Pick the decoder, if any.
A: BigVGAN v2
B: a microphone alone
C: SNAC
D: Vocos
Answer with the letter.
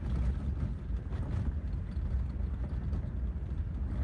B